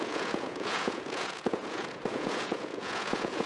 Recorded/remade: remade